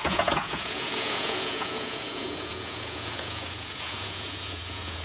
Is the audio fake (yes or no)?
yes